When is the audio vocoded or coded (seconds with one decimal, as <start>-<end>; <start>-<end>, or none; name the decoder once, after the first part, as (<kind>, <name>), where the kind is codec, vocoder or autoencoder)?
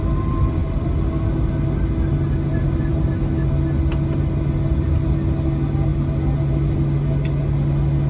0.6-1.1 (vocoder, BigVGAN v2); 2.5-3.1